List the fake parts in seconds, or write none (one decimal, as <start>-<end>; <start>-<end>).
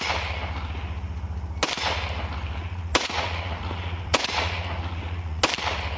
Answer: 2.6-5.4